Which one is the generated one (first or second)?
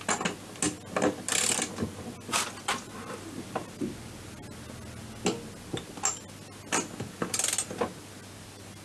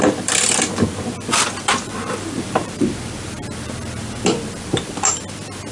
second